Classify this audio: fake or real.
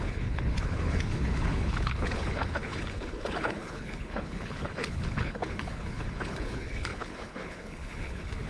fake